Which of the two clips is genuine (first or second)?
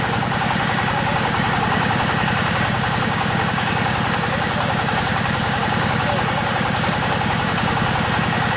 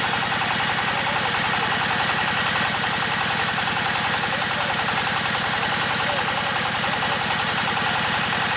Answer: second